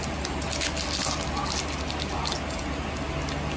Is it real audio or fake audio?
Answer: real